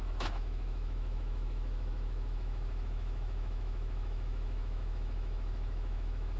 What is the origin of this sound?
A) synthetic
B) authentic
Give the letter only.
A